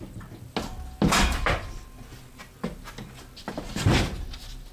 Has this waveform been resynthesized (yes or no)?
no